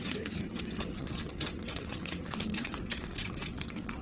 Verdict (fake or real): fake